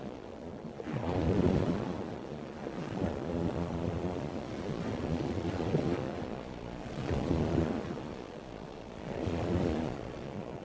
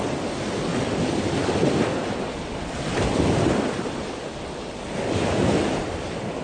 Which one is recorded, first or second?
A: second